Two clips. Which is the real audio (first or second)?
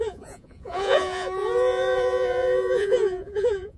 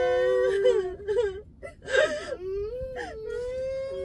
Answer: second